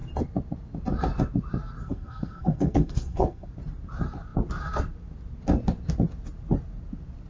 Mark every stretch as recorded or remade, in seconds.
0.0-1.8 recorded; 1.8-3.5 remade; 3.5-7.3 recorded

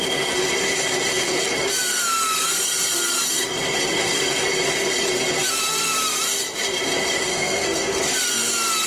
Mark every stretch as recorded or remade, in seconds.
0.0-7.3 recorded; 7.3-8.0 remade; 8.0-8.9 recorded

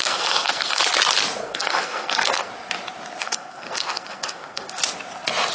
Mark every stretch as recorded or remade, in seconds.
0.0-0.8 remade; 0.8-1.4 recorded; 1.4-2.5 remade; 2.5-3.2 recorded; 3.2-4.8 remade; 4.8-5.5 recorded

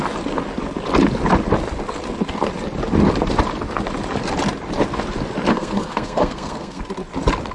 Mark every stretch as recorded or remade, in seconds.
0.0-5.5 recorded; 5.5-6.8 remade; 6.8-7.5 recorded

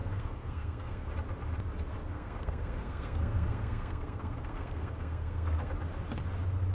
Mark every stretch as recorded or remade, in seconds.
0.0-1.1 remade; 1.1-2.0 recorded; 2.0-5.7 remade; 5.7-6.7 recorded

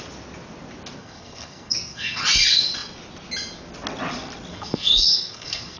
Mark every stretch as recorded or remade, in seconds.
0.0-1.0 recorded; 1.0-2.2 remade; 2.2-4.5 recorded; 4.5-5.8 remade